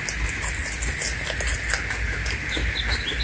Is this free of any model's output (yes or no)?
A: yes